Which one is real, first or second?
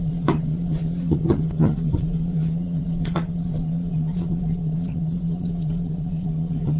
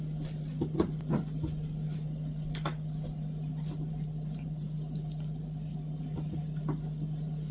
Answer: second